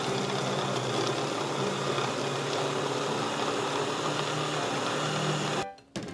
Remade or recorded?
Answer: recorded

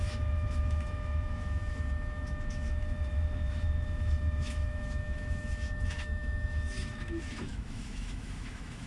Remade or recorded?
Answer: remade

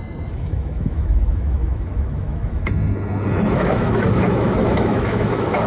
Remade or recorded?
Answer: remade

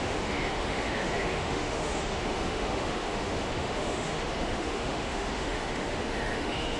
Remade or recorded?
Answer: remade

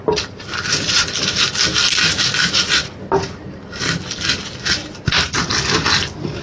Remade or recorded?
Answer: recorded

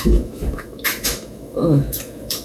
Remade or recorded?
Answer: remade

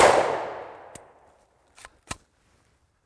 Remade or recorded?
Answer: recorded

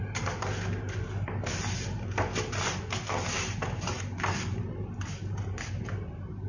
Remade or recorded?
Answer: recorded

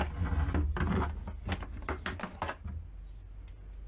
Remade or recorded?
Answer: recorded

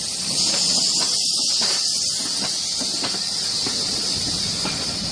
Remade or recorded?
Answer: recorded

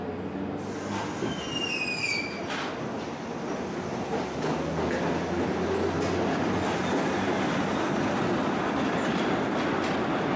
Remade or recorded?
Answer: recorded